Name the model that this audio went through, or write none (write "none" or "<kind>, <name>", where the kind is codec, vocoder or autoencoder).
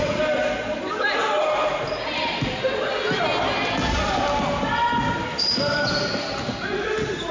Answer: none